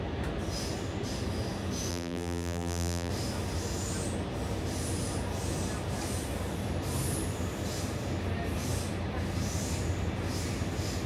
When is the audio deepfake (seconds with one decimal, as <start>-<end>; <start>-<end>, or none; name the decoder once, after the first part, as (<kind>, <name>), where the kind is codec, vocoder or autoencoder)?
1.9-3.1 (vocoder, BigVGAN v2)

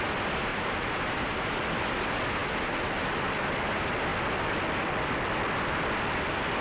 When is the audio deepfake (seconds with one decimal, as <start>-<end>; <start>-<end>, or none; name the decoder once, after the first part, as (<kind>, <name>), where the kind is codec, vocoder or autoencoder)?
0.5-1.7 (vocoder, BigVGAN v2); 2.4-3.1

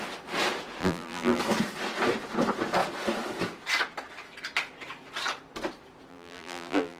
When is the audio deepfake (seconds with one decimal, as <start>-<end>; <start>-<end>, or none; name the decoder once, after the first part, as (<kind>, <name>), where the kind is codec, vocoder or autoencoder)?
0.8-1.4 (vocoder, BigVGAN v2); 6.1-7.0

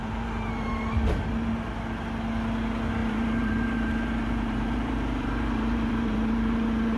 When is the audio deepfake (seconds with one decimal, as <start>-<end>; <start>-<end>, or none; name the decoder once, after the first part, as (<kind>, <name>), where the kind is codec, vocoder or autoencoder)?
0.0-0.8 (vocoder, BigVGAN v2); 3.0-7.0